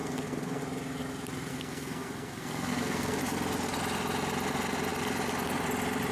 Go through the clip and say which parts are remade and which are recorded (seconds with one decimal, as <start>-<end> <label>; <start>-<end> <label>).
0.0-0.6 remade; 0.6-1.5 recorded; 1.5-3.2 remade; 3.2-6.1 recorded